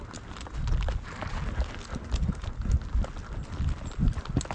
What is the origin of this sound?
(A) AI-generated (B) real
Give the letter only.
B